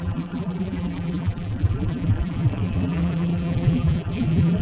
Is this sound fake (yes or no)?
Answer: yes